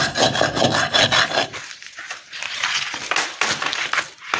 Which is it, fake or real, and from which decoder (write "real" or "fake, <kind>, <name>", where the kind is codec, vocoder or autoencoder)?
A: real